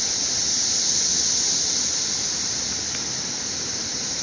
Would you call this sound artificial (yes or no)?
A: no